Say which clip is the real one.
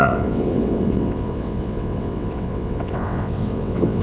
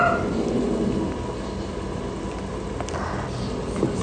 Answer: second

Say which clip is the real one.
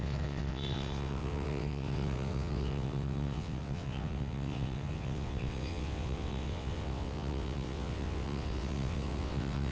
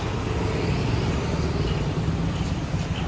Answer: second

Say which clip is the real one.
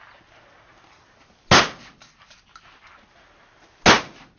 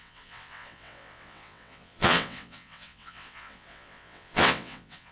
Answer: first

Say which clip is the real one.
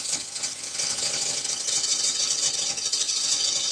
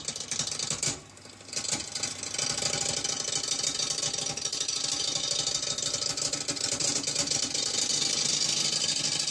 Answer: second